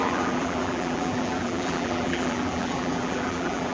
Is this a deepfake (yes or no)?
yes